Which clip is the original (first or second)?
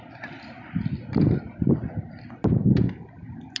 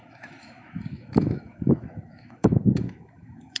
first